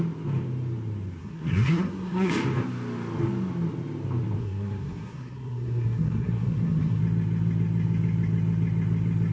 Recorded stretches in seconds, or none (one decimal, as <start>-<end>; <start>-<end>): 0.0-1.2; 2.3-4.4; 7.0-9.3